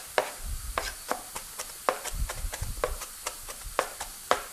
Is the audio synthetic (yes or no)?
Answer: yes